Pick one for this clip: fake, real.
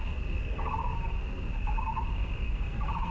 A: fake